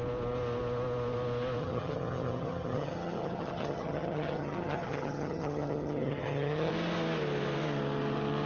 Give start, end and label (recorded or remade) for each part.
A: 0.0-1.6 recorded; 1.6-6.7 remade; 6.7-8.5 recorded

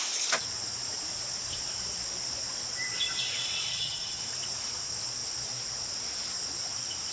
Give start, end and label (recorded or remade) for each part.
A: 0.0-3.7 recorded; 3.7-4.2 remade; 4.2-7.1 recorded

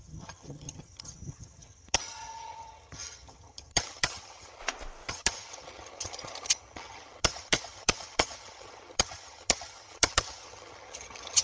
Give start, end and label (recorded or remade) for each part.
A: 0.0-4.6 remade; 4.6-5.1 recorded; 5.1-11.4 remade

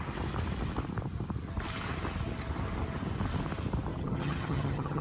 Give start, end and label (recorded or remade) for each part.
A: 0.0-3.9 recorded; 3.9-5.0 remade

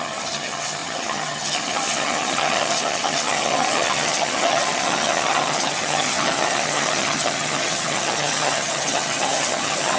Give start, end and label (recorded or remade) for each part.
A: 0.0-10.0 remade

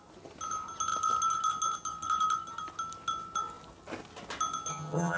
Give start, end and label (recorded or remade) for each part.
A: 0.0-4.7 recorded; 4.7-5.2 remade